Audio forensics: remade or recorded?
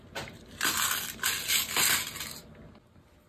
recorded